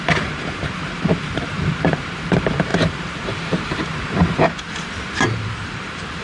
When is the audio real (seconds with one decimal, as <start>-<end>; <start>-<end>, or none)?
none